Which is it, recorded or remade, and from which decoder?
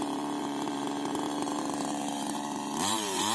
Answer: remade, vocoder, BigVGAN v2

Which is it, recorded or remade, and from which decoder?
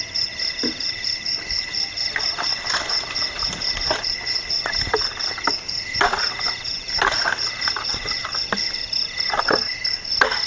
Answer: recorded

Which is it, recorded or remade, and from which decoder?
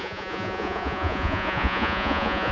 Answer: remade, vocoder, Vocos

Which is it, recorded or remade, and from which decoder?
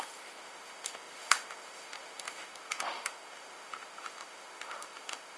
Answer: remade, autoencoder, DAC-VAE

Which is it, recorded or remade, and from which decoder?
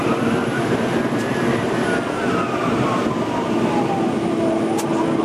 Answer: recorded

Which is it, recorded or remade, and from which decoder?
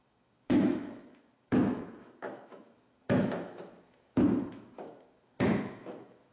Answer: remade, autoencoder, DAC-VAE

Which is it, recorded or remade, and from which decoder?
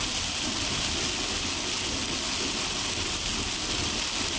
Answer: recorded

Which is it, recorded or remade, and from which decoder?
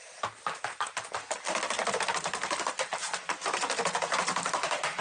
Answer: remade, vocoder, BigVGAN v2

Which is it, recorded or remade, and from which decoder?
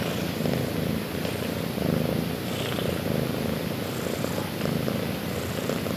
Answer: recorded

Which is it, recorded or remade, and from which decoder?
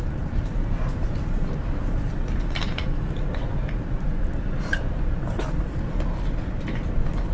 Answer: recorded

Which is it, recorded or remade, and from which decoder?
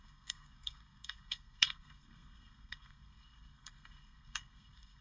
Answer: remade, codec, SNAC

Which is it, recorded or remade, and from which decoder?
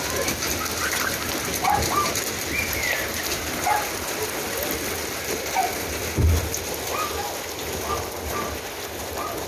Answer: recorded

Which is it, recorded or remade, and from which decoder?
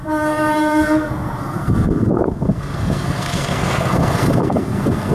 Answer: remade, codec, SNAC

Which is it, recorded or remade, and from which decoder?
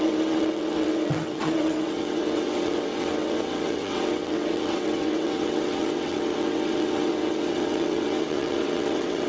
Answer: remade, vocoder, WaveNeXt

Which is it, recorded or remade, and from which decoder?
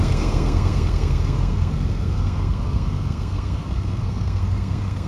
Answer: remade, codec, SNAC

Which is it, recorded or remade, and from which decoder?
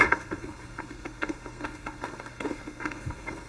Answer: remade, codec, SNAC